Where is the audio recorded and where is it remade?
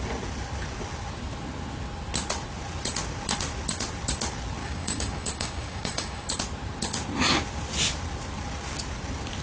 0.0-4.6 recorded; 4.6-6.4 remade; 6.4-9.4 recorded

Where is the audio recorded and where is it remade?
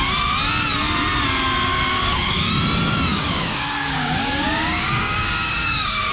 0.0-1.7 recorded; 1.7-2.5 remade; 2.5-3.1 recorded; 3.1-6.1 remade